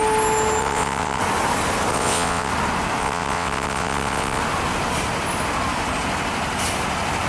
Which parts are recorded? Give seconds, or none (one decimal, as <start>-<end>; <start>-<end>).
0.0-0.6; 1.2-1.9; 2.5-3.0; 4.4-7.3